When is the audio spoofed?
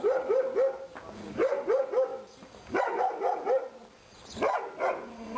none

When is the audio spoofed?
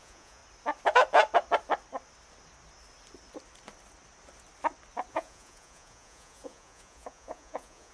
0.0-0.4 (vocoder, Vocos); 5.1-7.9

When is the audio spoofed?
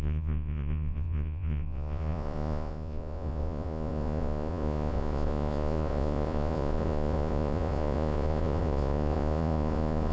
0.0-10.1 (vocoder, Vocos)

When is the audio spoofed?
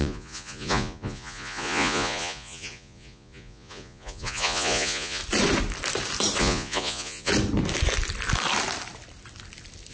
0.0-5.2 (vocoder, Vocos); 6.4-7.3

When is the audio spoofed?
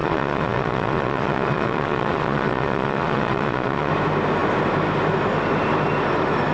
0.0-3.9 (vocoder, Vocos)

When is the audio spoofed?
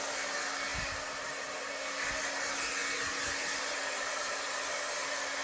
none